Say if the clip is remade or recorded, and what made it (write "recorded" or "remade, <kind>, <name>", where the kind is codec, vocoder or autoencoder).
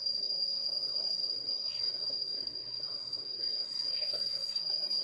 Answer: remade, codec, SNAC